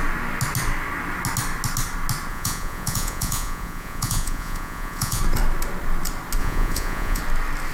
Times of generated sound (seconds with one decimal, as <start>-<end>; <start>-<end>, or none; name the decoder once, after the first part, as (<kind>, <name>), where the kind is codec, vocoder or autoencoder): 2.3-5.2 (vocoder, Vocos); 6.4-7.2